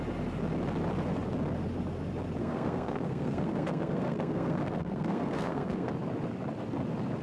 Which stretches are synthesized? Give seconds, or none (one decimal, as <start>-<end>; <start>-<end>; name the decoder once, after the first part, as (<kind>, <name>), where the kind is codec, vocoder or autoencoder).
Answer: 2.4-5.9 (codec, SNAC)